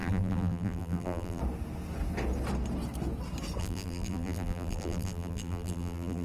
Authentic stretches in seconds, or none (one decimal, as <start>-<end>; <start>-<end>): 1.4-3.6